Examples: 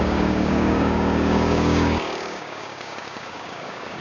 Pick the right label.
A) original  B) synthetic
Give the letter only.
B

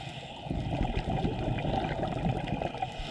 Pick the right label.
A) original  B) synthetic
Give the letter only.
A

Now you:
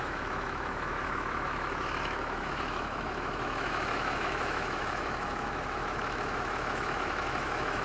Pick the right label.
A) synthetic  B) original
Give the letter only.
A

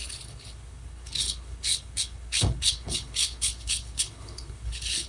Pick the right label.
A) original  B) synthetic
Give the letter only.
B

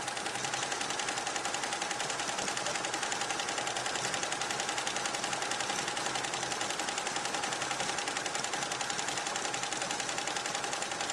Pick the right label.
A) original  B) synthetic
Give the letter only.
A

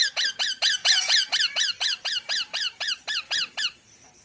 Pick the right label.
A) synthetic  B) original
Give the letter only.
A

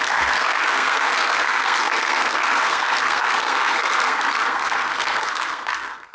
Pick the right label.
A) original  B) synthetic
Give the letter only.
B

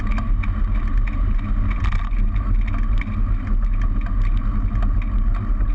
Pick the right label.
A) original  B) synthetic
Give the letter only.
A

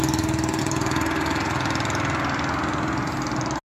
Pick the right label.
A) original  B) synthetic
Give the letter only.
A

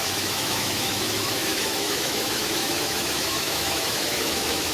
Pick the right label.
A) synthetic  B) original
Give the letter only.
A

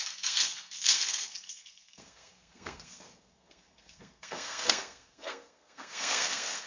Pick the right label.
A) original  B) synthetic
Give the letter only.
B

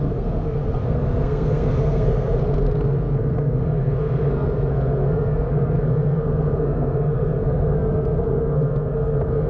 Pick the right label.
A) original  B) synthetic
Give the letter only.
B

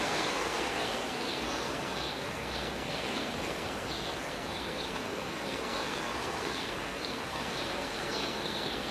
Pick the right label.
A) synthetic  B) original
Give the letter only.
A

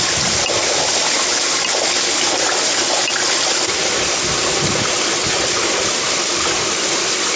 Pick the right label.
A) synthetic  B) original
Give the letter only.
B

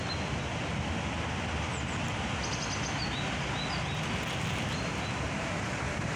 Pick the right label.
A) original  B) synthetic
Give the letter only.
A